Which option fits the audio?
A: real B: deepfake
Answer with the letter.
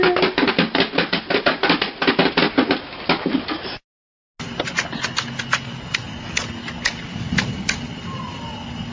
A